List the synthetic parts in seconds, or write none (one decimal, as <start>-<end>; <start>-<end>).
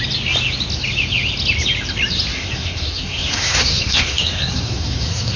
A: 2.3-5.4